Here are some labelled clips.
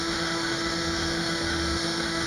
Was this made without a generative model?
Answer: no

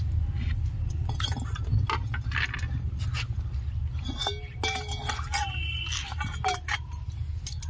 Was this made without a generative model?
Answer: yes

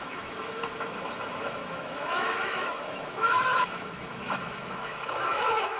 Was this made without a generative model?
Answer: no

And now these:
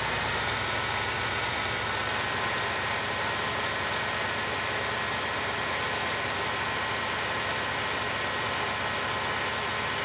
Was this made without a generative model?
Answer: yes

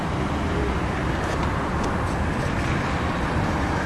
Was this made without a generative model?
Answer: yes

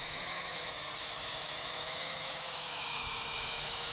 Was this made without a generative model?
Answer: no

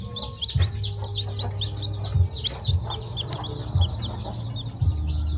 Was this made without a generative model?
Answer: yes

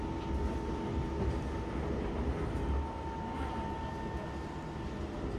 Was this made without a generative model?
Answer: yes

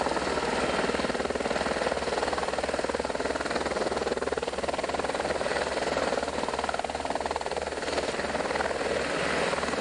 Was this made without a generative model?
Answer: yes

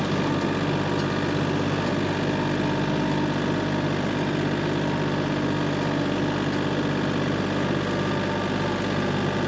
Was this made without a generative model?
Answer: yes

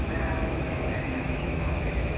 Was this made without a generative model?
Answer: no